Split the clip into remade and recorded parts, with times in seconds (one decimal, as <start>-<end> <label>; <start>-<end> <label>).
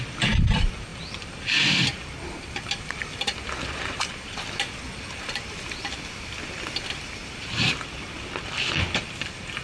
0.0-9.6 recorded